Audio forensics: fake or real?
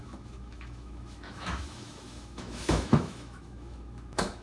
fake